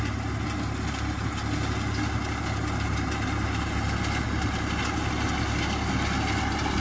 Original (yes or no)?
yes